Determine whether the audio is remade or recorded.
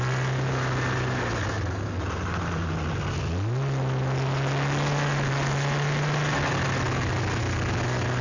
recorded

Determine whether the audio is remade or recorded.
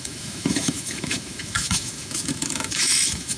remade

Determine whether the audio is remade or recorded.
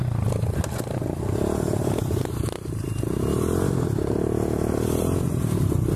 recorded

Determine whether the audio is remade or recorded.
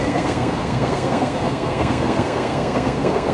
remade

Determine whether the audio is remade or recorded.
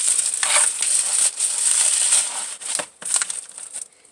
recorded